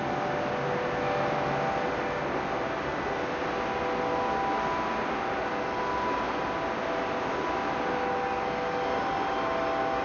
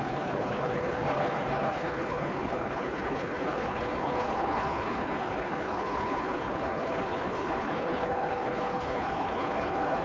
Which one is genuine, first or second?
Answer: first